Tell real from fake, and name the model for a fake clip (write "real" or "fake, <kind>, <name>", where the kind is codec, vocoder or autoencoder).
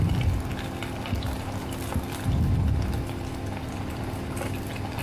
real